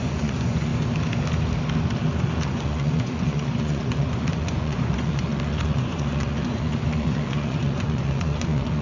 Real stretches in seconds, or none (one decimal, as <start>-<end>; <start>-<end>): 0.7-2.2